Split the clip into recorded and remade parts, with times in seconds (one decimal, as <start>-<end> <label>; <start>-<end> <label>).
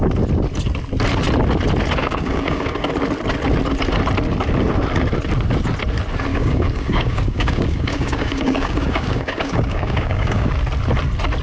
0.0-2.0 recorded; 2.0-2.9 remade; 2.9-6.3 recorded; 6.3-10.5 remade; 10.5-11.4 recorded